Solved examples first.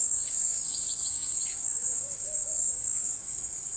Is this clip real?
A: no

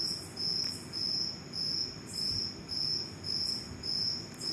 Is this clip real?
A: yes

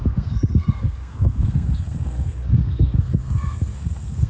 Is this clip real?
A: no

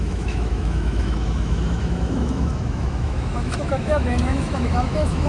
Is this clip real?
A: no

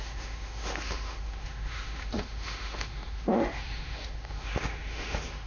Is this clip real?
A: no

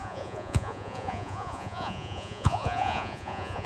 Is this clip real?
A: no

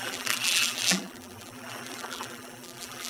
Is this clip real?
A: no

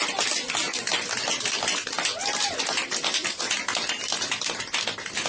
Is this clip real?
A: yes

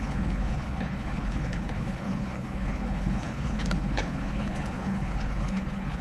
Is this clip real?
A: no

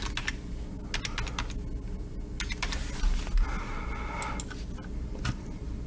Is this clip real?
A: yes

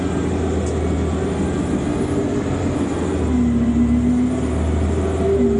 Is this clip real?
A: yes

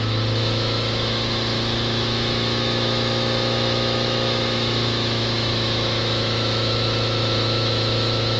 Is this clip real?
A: no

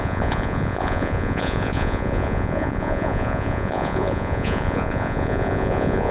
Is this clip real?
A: no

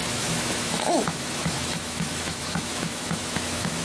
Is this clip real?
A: no